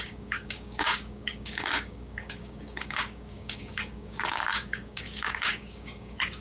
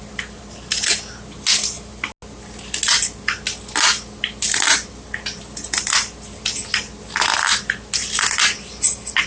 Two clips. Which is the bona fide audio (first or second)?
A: second